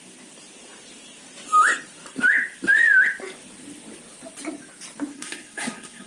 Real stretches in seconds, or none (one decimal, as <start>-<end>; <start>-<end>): 0.0-5.1